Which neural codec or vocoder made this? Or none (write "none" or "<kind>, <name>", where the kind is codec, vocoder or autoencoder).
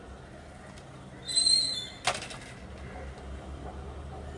none